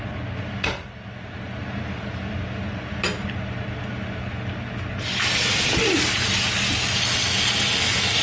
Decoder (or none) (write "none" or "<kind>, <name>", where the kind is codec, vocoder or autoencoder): none